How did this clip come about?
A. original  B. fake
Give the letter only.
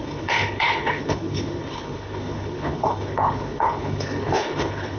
B